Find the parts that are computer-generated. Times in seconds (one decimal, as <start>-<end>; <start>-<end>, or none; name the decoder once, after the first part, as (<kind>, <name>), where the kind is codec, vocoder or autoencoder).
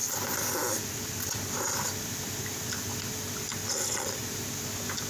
none